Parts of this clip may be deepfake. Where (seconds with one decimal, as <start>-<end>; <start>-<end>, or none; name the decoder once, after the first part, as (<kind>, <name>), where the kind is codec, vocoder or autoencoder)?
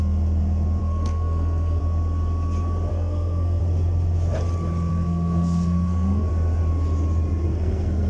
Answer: 0.8-1.8 (codec, SNAC); 2.9-3.6; 4.9-6.3; 7.5-8.1